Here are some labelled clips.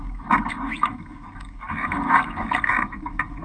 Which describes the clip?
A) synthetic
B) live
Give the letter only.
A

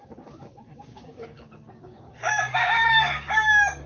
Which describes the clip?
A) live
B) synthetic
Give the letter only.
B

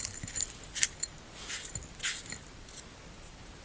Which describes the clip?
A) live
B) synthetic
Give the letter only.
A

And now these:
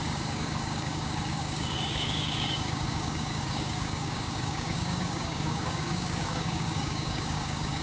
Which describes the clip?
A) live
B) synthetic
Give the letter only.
B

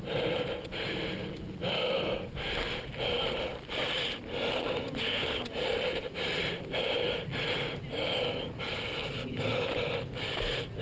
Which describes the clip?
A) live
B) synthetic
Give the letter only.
A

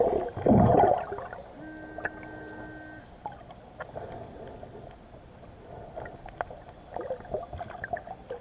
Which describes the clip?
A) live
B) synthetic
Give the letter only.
A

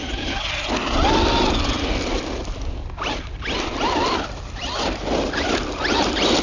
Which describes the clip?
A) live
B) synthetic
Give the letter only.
A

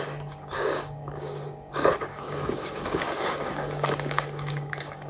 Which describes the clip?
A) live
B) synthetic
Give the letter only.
B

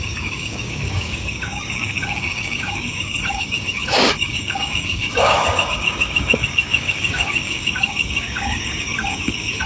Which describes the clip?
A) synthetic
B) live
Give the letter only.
A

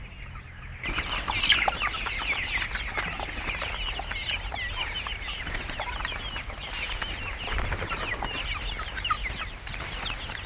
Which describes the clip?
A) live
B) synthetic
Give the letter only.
A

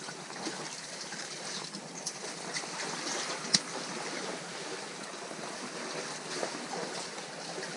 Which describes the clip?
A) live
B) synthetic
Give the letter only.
A